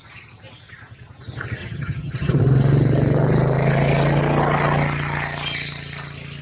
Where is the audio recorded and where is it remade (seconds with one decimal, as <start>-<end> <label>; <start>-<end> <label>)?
0.0-1.6 recorded; 1.6-2.4 remade; 2.4-6.4 recorded